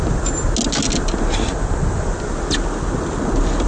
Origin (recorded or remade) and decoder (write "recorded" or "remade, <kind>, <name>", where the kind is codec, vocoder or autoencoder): recorded